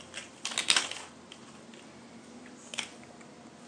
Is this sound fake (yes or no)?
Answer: no